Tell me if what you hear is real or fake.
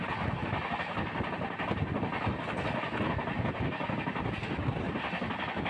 real